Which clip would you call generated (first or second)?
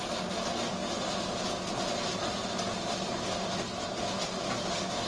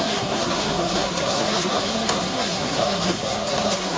second